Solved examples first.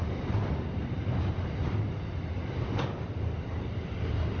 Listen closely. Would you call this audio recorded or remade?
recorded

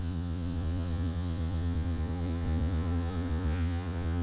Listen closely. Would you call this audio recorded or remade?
remade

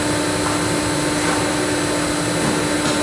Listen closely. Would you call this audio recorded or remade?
recorded